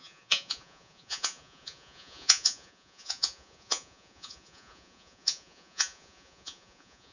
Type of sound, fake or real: fake